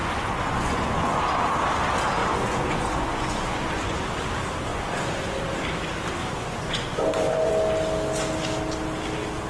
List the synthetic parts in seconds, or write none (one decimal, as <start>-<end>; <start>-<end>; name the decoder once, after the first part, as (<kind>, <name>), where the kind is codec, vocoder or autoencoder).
0.0-1.2 (vocoder, Vocos); 2.2-4.0; 4.7-5.4; 6.2-7.5